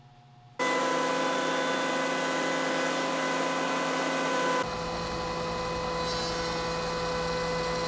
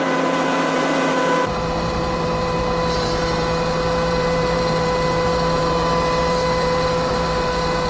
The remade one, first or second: second